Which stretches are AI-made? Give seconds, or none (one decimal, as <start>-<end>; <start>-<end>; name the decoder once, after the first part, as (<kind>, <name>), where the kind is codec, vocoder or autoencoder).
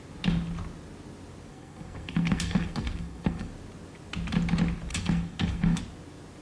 1.5-3.5 (codec, SNAC); 4.9-5.8